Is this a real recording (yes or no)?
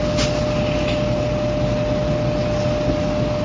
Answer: yes